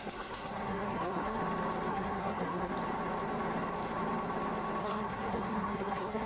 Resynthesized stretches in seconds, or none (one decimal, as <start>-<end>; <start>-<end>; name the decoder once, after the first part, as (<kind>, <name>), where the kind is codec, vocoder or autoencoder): 0.0-1.4 (codec, SNAC); 1.9-2.7; 4.8-6.3